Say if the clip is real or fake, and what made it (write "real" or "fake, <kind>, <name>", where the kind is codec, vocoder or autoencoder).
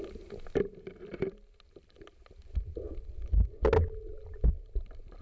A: real